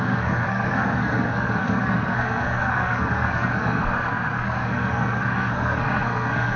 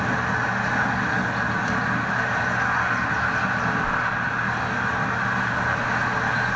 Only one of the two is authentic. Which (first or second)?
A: second